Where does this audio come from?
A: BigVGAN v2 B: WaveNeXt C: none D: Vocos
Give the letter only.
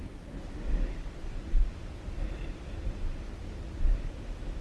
C